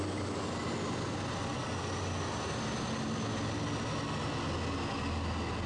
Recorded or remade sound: recorded